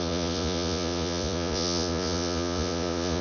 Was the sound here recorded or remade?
remade